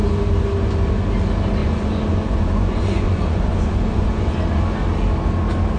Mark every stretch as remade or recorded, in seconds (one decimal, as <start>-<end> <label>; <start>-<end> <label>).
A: 0.0-1.6 recorded; 1.6-4.3 remade; 4.3-5.8 recorded